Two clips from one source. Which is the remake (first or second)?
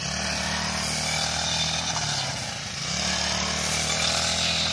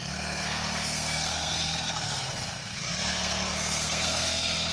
second